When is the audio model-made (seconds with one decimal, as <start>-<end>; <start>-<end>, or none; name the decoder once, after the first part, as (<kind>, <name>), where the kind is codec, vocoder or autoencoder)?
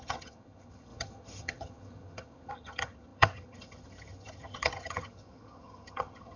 0.0-6.4 (vocoder, HiFi-GAN)